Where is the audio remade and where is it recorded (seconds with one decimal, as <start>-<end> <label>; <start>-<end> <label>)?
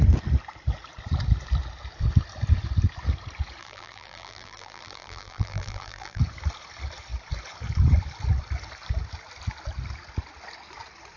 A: 0.0-3.6 recorded; 3.6-6.2 remade; 6.2-11.2 recorded